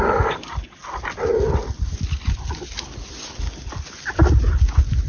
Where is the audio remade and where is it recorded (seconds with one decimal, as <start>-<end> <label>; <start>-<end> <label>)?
0.0-5.1 recorded